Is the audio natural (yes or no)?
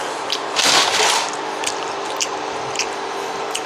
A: yes